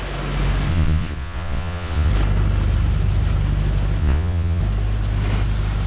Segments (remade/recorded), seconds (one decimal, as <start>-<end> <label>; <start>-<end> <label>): 0.0-0.7 recorded; 0.7-2.1 remade; 2.1-4.0 recorded; 4.0-4.6 remade; 4.6-5.9 recorded